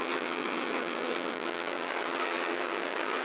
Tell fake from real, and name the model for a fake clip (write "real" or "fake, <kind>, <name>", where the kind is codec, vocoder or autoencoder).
fake, vocoder, HiFi-GAN